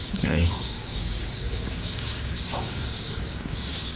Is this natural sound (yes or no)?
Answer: no